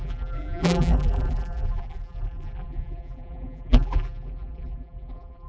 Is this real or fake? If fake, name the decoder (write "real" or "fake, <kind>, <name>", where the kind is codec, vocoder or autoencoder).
fake, vocoder, BigVGAN v2